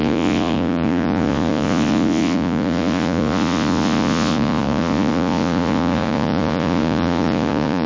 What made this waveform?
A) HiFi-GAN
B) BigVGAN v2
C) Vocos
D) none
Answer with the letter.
C